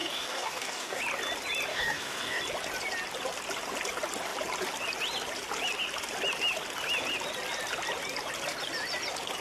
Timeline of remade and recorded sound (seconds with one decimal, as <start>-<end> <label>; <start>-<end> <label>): 0.0-1.0 remade; 1.0-1.7 recorded; 1.7-2.4 remade; 2.4-9.4 recorded

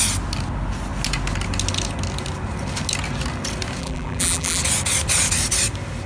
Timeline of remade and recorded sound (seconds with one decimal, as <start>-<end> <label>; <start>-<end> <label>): 0.0-3.8 recorded; 3.8-4.6 remade; 4.6-6.1 recorded

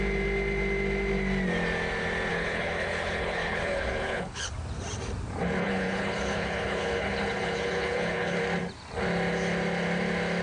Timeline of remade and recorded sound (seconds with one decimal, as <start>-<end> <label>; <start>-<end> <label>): 0.0-2.3 recorded; 2.3-4.5 remade; 4.5-5.6 recorded; 5.6-8.4 remade; 8.4-10.4 recorded

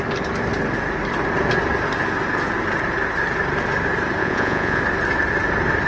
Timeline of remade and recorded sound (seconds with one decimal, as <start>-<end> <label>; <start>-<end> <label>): 0.0-4.2 recorded; 4.2-4.8 remade; 4.8-5.9 recorded

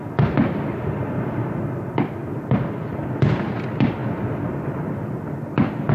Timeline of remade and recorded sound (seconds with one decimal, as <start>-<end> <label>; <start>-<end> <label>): 0.0-5.9 recorded

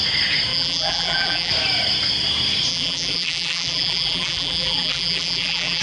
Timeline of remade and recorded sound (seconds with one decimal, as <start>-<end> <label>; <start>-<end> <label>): 0.0-0.5 recorded; 0.5-1.5 remade; 1.5-2.7 recorded; 2.7-5.8 remade